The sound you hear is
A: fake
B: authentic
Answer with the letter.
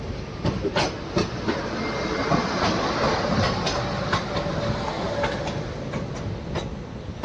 B